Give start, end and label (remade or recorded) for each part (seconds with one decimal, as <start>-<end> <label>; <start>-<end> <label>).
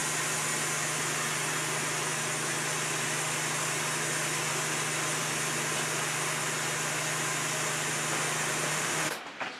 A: 0.0-8.7 recorded; 8.7-9.2 remade; 9.2-9.6 recorded